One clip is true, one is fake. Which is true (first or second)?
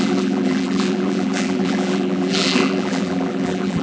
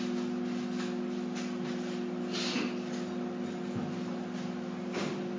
second